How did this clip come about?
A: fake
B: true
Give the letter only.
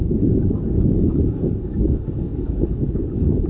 A